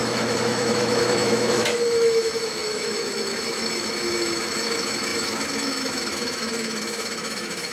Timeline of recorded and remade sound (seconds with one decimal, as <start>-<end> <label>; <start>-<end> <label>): 0.0-7.7 remade